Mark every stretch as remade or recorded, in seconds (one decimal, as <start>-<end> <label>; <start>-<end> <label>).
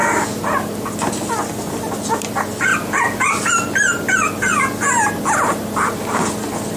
0.0-6.8 recorded